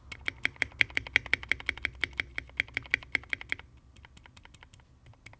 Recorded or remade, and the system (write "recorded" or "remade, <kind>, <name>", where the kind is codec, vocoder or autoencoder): recorded